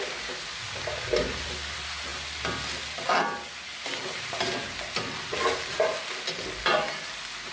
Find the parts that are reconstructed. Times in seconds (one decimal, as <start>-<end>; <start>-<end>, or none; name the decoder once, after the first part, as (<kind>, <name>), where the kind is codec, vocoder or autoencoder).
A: none